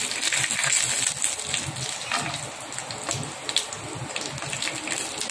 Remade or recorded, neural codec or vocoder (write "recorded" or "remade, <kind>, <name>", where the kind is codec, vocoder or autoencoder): recorded